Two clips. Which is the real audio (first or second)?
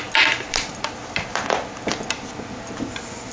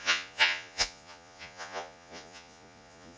first